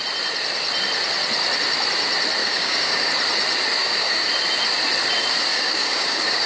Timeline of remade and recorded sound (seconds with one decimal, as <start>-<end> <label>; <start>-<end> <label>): 0.0-2.4 recorded; 2.4-3.1 remade; 3.1-3.8 recorded; 3.8-4.3 remade; 4.3-5.5 recorded; 5.5-6.5 remade